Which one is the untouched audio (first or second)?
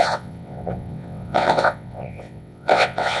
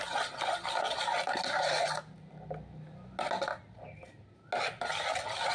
second